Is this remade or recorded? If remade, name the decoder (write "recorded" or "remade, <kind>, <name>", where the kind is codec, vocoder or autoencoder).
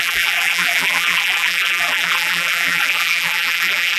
remade, vocoder, BigVGAN v2